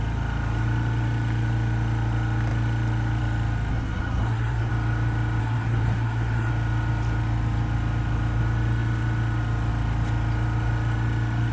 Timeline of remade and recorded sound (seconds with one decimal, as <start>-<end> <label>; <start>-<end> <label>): 0.0-3.7 recorded; 3.7-4.7 remade; 4.7-5.4 recorded; 5.4-6.5 remade; 6.5-11.5 recorded